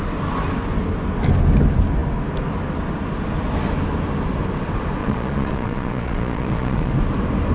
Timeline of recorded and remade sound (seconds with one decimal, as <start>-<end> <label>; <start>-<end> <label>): 0.0-5.0 recorded; 5.0-6.9 remade; 6.9-7.5 recorded